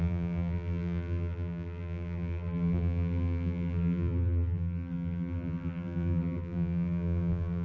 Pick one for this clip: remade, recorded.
remade